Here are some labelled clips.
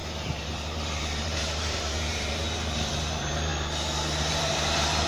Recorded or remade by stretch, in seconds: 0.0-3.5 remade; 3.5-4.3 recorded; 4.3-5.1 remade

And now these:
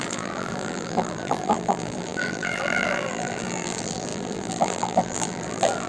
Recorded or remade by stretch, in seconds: 0.0-5.9 remade